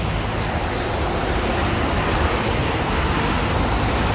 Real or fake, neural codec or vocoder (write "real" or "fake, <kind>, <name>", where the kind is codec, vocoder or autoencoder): real